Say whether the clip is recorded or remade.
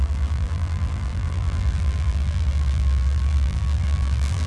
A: remade